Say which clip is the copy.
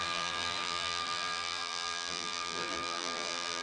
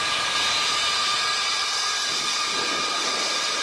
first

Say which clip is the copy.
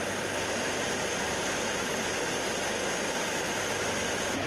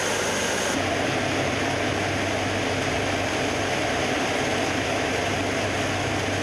first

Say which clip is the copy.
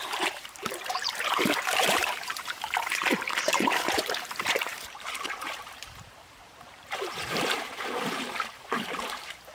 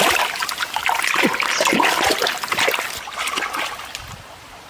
first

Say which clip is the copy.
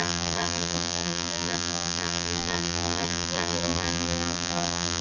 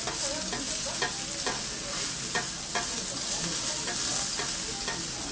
first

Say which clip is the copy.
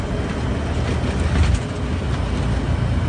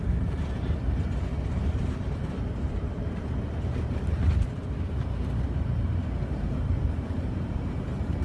second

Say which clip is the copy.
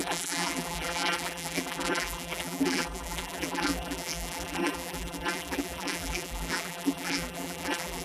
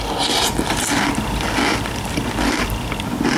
first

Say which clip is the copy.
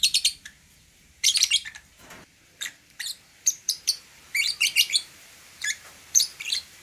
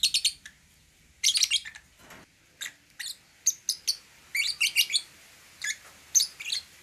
first